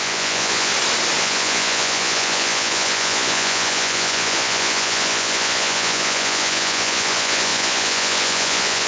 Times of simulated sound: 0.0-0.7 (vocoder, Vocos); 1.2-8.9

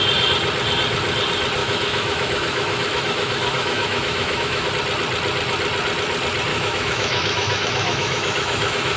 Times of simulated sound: 1.6-4.7 (autoencoder, DAC-VAE); 6.5-9.0

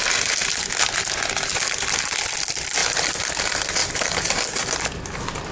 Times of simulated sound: 3.8-5.5 (vocoder, BigVGAN v2)

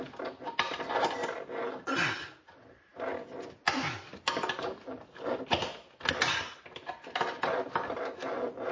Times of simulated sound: none

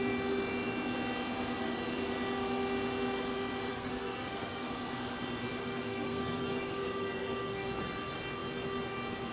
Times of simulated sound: 3.7-4.7 (codec, SNAC); 5.6-7.8

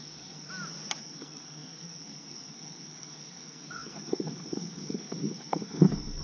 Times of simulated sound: 0.0-0.5 (codec, SNAC); 1.0-6.2

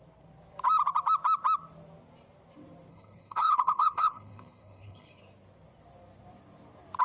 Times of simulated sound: 2.9-5.2 (codec, HILCodec)

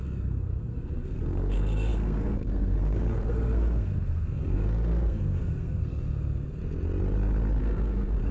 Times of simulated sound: 0.0-6.6 (codec, SNAC); 7.6-8.3